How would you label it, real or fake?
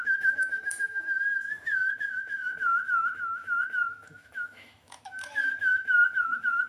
fake